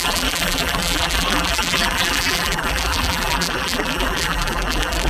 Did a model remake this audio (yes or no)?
yes